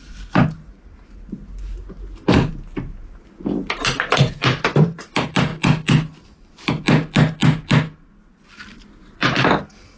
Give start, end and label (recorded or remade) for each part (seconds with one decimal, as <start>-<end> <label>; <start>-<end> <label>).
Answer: 0.0-10.0 recorded